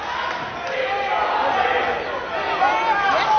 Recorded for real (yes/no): yes